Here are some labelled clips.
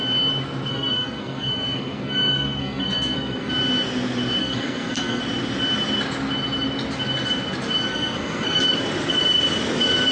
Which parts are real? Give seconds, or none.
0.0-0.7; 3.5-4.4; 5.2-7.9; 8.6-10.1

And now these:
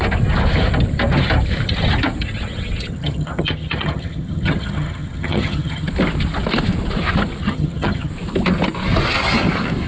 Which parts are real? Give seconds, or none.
0.0-2.9; 5.9-7.4; 8.1-9.9

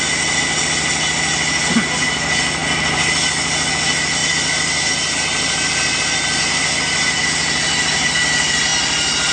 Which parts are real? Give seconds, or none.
0.0-4.2; 6.4-9.3